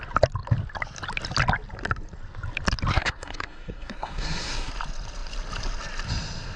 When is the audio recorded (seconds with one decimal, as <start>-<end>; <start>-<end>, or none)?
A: 0.0-2.9; 4.7-6.6